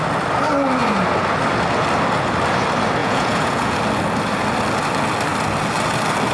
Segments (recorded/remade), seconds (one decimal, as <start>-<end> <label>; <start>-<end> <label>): 0.0-3.0 recorded; 3.0-3.8 remade; 3.8-6.3 recorded